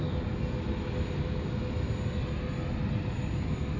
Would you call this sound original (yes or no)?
yes